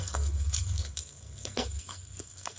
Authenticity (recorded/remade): remade